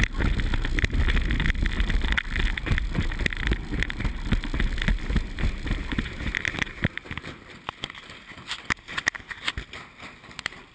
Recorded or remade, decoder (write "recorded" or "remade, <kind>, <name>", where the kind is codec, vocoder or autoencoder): recorded